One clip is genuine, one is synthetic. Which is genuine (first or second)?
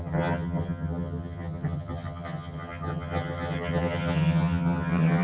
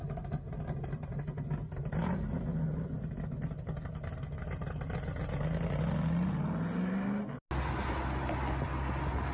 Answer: second